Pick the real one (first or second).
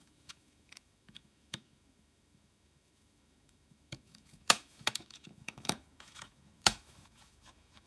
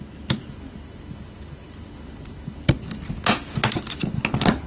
second